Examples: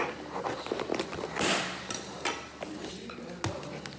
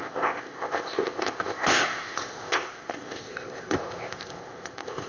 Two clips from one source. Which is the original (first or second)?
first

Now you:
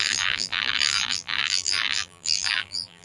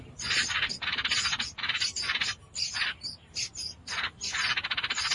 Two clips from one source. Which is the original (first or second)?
second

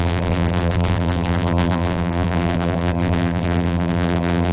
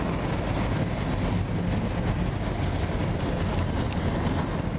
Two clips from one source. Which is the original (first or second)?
second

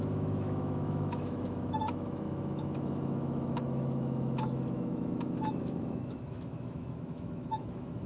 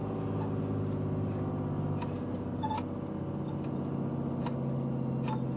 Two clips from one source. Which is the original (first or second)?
second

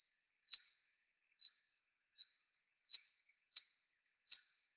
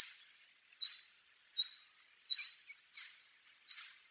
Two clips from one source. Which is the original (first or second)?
second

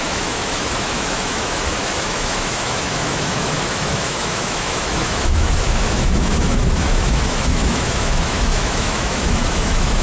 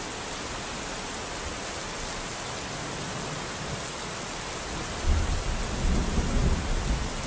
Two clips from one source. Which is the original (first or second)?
second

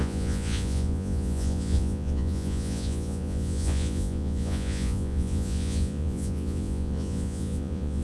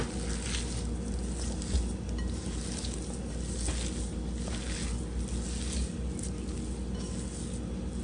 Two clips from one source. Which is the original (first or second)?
second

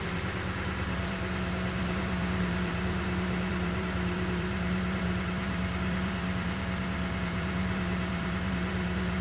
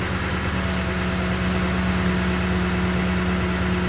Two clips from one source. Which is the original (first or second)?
second